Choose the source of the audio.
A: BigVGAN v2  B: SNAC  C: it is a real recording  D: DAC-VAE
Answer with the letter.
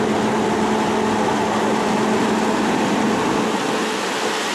C